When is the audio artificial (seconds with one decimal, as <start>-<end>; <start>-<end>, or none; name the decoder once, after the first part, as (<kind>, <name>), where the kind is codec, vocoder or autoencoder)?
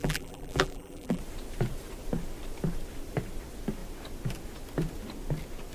0.0-1.2 (vocoder, BigVGAN v2)